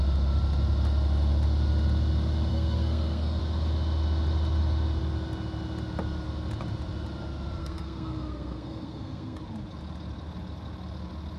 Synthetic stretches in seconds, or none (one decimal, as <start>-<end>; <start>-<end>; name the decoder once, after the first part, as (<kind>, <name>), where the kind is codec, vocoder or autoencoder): 2.5-3.4 (codec, SNAC); 7.6-9.4